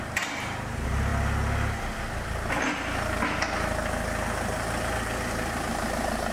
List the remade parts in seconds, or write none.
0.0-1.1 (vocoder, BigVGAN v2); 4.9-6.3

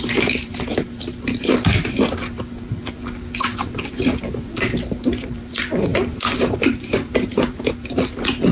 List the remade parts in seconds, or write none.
0.0-2.8 (vocoder, BigVGAN v2); 3.4-8.5